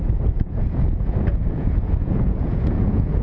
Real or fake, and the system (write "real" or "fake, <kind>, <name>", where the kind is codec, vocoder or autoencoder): fake, vocoder, Vocos